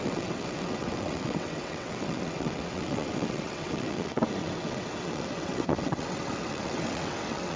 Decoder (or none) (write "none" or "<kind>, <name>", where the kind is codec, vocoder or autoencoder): vocoder, WaveNeXt